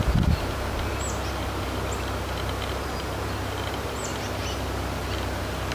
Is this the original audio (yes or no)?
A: yes